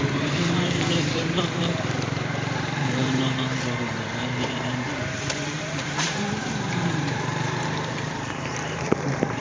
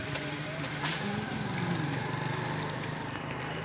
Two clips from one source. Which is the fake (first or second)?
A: first